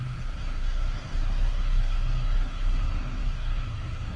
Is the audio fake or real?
fake